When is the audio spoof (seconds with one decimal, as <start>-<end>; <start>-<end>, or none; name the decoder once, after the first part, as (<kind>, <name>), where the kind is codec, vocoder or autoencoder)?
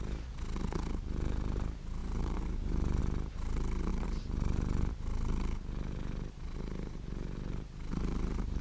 2.0-3.0 (vocoder, BigVGAN v2); 3.9-4.9; 7.9-8.6